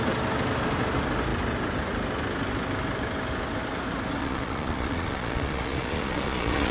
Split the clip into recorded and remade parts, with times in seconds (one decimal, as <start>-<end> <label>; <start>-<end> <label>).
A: 0.0-4.2 recorded; 4.2-6.7 remade